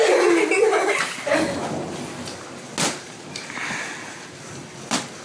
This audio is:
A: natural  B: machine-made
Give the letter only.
A